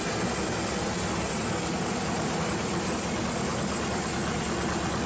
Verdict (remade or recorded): recorded